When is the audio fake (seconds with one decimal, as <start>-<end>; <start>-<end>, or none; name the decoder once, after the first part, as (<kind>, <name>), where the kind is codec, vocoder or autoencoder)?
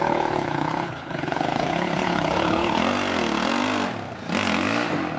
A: 0.0-2.8 (codec, HILCodec)